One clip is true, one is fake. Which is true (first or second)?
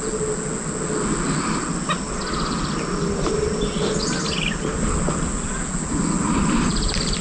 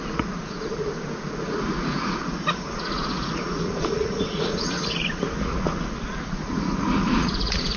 first